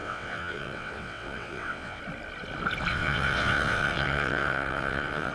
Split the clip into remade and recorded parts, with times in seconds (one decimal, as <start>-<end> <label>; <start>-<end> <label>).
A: 0.0-2.0 remade; 2.0-2.9 recorded; 2.9-5.3 remade